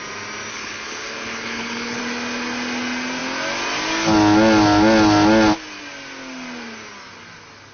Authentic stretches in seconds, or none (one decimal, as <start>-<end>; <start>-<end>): 0.0-0.5; 2.0-7.7